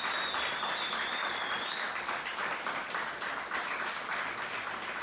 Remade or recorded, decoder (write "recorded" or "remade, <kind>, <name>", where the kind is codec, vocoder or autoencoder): recorded